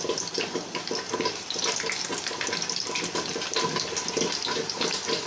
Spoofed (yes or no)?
no